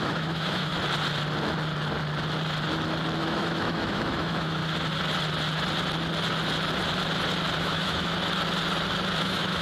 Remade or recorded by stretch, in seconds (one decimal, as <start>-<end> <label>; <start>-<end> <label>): 0.0-0.7 remade; 0.7-3.2 recorded; 3.2-4.6 remade; 4.6-7.6 recorded; 7.6-8.1 remade; 8.1-9.2 recorded; 9.2-9.6 remade